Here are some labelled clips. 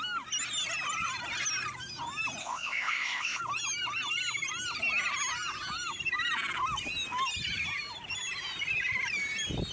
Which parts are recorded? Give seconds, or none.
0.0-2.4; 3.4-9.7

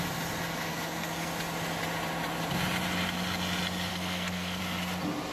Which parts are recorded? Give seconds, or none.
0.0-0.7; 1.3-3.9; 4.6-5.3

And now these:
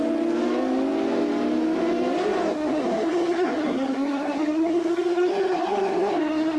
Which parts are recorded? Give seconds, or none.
0.0-2.5